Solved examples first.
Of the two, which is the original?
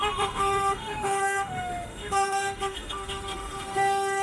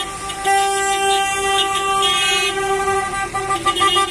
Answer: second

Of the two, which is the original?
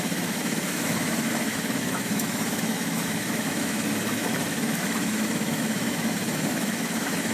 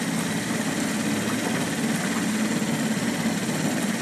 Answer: second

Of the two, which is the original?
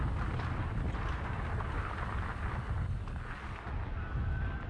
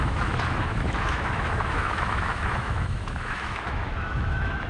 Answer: first